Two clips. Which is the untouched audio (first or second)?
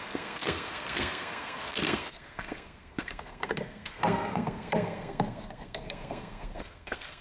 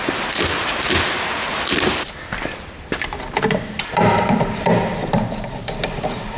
second